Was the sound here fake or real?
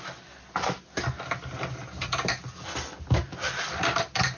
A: real